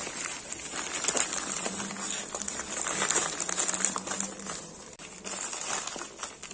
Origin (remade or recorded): recorded